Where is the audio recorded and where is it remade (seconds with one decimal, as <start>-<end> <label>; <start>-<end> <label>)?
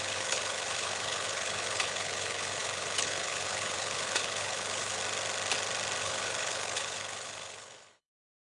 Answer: 0.0-5.0 remade; 5.0-6.0 recorded; 6.0-8.5 remade